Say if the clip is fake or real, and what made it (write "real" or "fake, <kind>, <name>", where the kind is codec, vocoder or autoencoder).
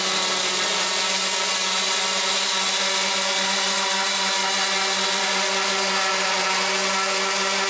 real